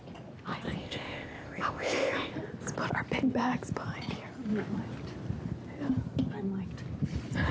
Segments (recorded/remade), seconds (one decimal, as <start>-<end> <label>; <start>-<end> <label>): 0.0-0.8 recorded; 0.8-2.3 remade; 2.3-7.5 recorded